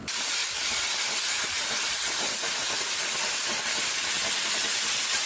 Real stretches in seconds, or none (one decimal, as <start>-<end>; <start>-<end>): 0.4-3.6